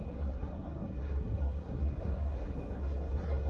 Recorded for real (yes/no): no